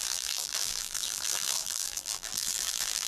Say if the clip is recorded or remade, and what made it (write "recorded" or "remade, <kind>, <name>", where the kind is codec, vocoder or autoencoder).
remade, vocoder, BigVGAN v2